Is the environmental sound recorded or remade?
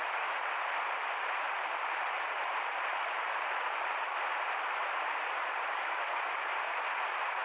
recorded